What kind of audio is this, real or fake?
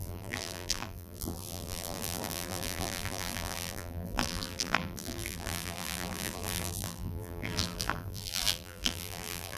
fake